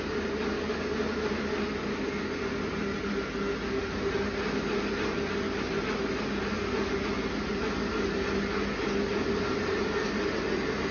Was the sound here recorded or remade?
recorded